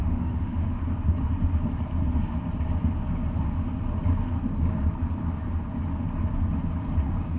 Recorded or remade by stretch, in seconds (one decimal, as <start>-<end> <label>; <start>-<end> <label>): 0.0-0.8 remade; 0.8-7.4 recorded